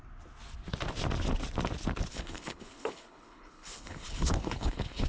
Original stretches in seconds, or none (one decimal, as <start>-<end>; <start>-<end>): 0.0-2.1